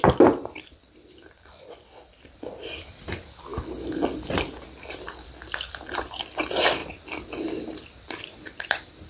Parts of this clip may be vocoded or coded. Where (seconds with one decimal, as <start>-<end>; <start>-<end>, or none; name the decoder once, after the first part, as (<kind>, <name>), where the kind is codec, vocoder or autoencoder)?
0.0-3.5 (vocoder, BigVGAN v2); 4.5-6.8; 8.6-9.1

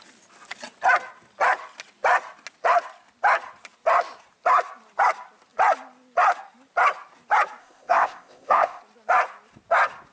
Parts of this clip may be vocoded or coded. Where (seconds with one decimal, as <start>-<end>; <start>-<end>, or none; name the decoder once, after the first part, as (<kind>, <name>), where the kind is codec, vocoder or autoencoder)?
7.6-8.8 (codec, ZipCodec)

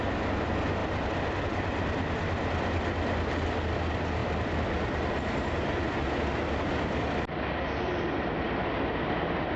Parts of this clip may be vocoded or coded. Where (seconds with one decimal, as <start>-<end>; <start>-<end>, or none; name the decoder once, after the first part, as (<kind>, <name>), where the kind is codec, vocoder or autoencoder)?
none

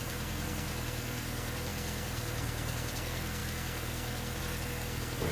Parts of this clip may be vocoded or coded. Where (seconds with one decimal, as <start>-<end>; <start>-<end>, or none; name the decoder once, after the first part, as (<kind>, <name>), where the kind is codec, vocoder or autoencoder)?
0.0-5.3 (codec, SNAC)

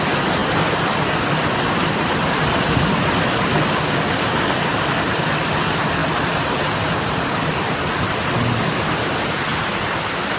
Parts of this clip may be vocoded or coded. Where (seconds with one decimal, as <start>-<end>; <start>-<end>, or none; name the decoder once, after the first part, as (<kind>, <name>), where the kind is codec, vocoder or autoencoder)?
none

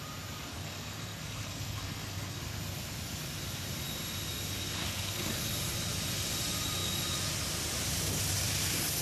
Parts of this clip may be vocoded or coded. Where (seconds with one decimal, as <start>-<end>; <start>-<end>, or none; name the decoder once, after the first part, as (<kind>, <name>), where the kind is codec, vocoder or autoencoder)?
0.5-2.4 (codec, SNAC); 4.8-5.5

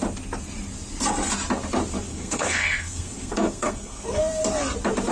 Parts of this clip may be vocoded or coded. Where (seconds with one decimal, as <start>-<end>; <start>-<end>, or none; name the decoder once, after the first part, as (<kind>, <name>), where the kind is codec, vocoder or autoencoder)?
2.1-4.2 (codec, SNAC)